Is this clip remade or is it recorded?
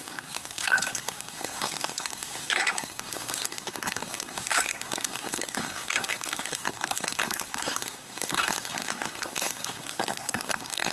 remade